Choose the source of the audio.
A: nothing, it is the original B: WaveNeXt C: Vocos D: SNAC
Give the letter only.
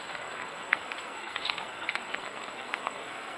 D